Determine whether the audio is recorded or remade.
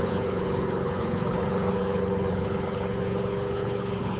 remade